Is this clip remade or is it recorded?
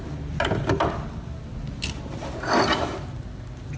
recorded